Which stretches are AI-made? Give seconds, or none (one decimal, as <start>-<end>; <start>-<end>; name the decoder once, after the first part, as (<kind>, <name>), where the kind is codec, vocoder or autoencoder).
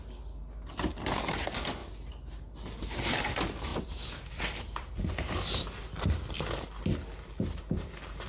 3.7-7.6 (vocoder, BigVGAN v2)